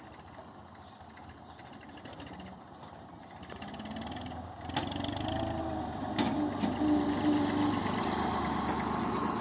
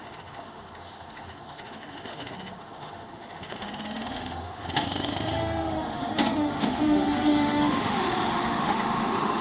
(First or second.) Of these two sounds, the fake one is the second